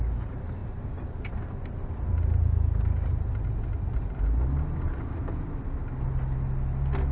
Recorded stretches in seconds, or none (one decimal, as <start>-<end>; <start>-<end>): 0.0-7.1

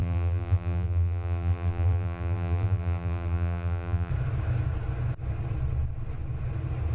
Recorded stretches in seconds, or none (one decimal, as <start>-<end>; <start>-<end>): 4.1-6.9

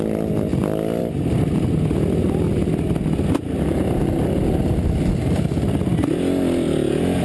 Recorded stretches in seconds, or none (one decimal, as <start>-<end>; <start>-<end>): 0.0-7.2

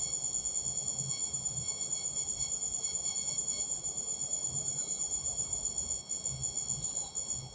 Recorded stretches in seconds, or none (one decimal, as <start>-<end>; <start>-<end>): 0.0-1.2; 5.7-7.5

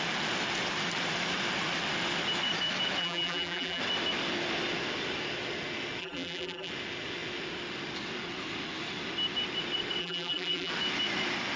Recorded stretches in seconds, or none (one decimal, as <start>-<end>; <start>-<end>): 0.0-3.0; 3.8-6.0; 6.7-10.0; 10.7-11.6

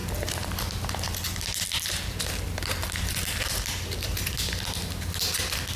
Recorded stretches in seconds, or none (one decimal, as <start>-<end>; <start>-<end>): 0.0-3.1

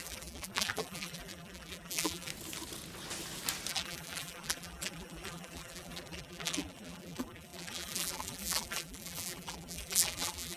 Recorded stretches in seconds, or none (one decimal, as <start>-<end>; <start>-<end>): 2.3-3.7

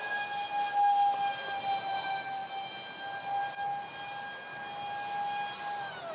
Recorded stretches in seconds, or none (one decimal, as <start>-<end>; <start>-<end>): 0.0-6.1